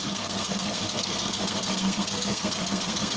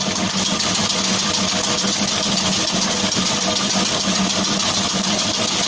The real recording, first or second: second